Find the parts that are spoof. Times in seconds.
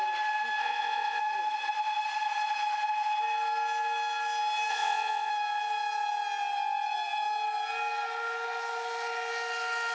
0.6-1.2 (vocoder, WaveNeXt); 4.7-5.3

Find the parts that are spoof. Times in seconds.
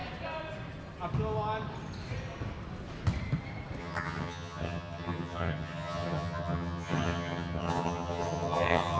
3.8-9.0 (vocoder, HiFi-GAN)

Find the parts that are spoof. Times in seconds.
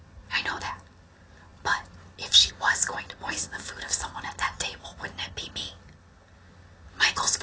none